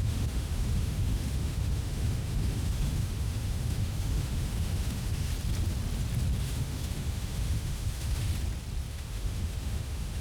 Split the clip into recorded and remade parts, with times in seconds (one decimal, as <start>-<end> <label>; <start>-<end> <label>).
0.0-5.3 remade; 5.3-6.4 recorded; 6.4-8.3 remade; 8.3-8.9 recorded; 8.9-10.2 remade